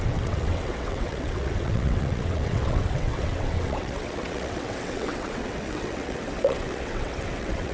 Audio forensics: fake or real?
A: fake